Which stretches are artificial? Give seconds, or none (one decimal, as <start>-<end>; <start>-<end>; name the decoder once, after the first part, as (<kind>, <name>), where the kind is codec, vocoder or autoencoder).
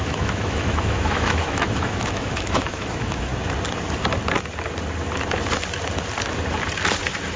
0.0-3.3 (autoencoder, DAC-VAE)